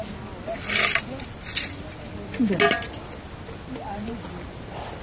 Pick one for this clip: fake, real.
real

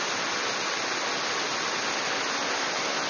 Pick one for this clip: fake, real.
real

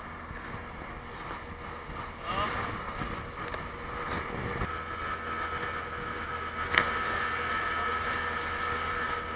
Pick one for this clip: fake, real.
real